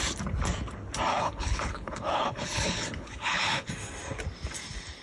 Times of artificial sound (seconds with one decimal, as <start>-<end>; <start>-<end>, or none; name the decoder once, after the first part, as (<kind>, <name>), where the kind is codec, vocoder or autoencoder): 1.1-3.7 (codec, HILCodec)